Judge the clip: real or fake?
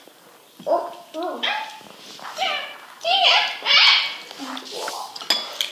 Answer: real